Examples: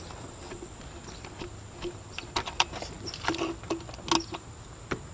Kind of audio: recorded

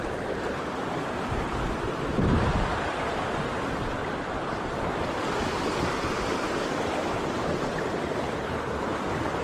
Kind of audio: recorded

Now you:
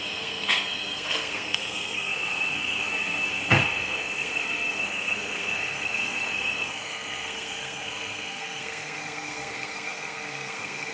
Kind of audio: remade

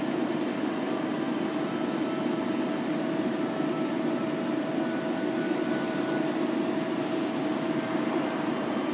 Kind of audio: recorded